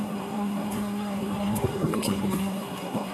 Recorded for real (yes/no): no